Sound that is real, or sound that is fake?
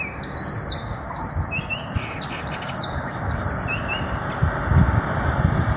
real